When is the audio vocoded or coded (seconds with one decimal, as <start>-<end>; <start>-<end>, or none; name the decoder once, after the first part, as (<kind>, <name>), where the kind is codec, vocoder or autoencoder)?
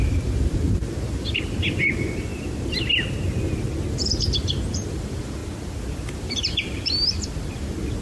0.0-2.3 (vocoder, BigVGAN v2); 4.9-5.4; 6.1-8.0